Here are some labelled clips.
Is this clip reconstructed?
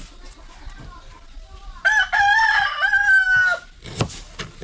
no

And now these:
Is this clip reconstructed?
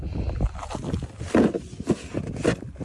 no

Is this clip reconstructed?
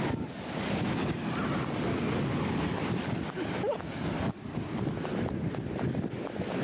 no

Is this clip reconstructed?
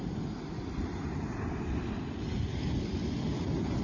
no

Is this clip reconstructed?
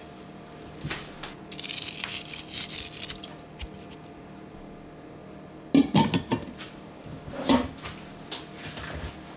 no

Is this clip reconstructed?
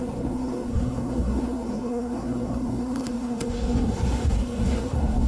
yes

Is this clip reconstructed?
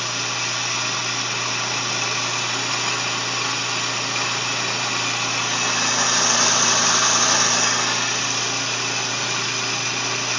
no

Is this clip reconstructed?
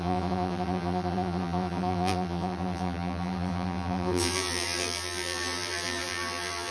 yes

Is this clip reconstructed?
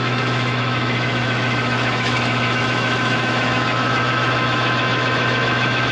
yes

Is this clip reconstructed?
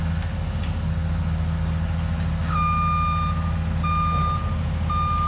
no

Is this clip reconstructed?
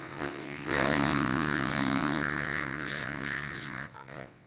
yes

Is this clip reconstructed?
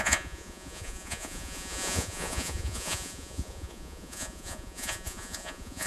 yes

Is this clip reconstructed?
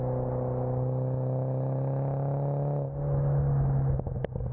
no